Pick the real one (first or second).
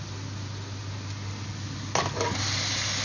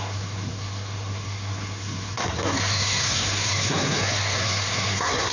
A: first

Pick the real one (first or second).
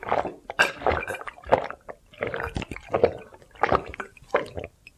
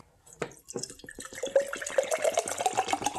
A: second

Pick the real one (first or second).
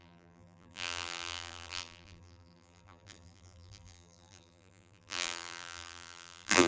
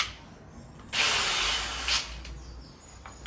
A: second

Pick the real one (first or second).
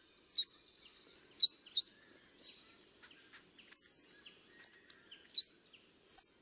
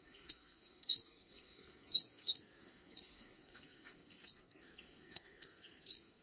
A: first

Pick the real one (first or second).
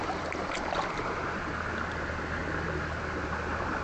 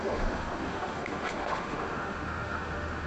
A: first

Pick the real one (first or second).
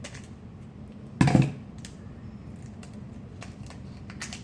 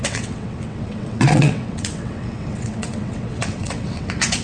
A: first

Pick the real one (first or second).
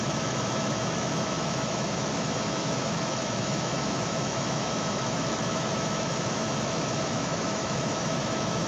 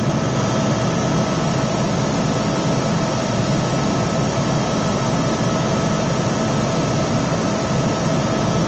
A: second